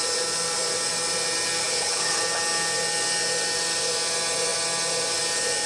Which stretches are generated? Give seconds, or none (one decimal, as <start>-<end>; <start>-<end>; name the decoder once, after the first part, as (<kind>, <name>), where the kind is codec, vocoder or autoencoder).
1.6-2.2 (codec, HILCodec)